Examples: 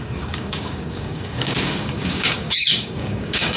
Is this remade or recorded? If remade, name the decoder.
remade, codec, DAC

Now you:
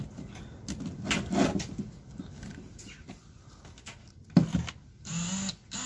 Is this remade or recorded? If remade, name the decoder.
recorded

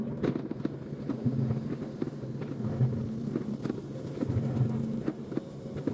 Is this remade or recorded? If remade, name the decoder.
recorded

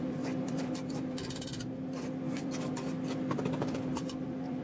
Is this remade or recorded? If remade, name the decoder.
remade, vocoder, BigVGAN v2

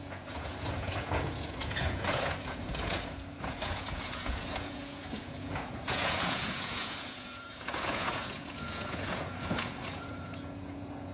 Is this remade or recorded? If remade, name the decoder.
remade, vocoder, Vocos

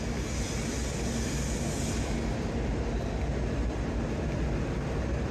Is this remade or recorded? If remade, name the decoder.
recorded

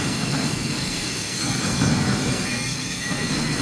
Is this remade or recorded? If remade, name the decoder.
remade, codec, SNAC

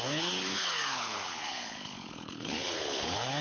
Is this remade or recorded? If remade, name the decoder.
remade, codec, HILCodec